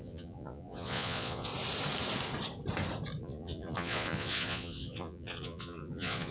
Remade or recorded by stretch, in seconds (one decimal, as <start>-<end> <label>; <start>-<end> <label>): 0.0-1.5 remade; 1.5-3.2 recorded; 3.2-6.3 remade